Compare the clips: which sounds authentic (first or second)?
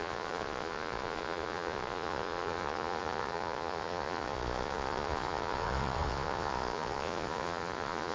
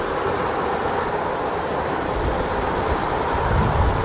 second